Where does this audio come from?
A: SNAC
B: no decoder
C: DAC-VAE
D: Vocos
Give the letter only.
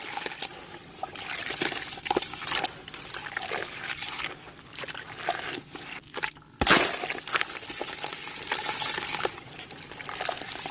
B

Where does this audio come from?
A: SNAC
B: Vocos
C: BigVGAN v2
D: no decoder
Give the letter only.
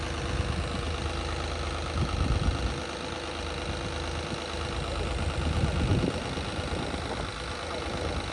D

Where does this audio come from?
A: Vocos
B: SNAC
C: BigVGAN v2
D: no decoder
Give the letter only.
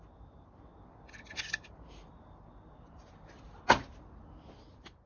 D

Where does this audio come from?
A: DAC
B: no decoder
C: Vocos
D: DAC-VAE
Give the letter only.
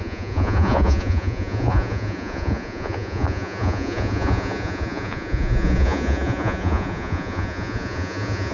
C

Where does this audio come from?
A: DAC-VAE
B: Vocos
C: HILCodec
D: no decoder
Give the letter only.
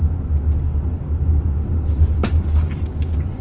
D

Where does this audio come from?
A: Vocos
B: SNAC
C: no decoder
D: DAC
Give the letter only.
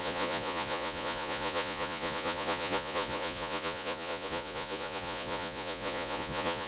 A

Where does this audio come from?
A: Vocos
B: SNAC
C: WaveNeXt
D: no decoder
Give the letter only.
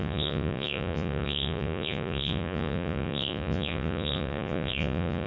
A